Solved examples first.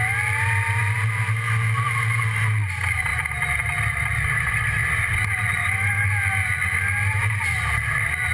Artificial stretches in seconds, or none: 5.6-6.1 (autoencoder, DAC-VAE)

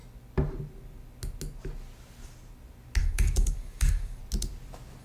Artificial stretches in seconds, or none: 3.0-4.2 (codec, DAC)